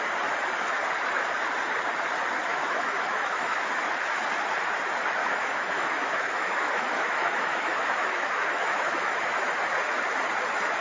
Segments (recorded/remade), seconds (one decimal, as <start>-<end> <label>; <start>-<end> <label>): 0.0-2.5 recorded; 2.5-3.8 remade; 3.8-5.2 recorded; 5.2-9.5 remade; 9.5-10.8 recorded